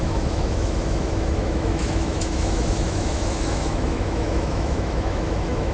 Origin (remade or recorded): remade